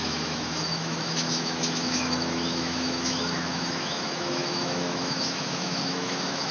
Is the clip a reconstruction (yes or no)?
yes